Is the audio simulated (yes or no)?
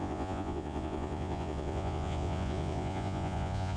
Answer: yes